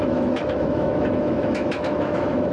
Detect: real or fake fake